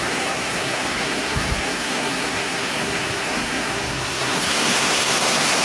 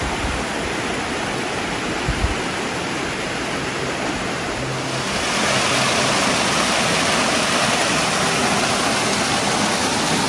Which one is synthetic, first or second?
first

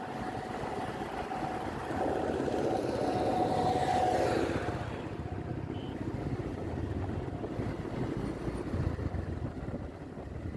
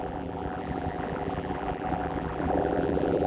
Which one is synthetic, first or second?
second